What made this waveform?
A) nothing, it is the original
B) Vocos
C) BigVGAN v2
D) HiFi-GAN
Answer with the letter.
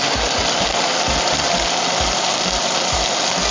A